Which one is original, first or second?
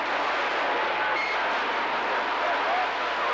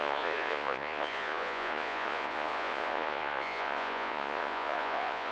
first